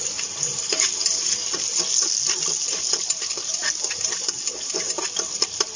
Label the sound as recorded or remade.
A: recorded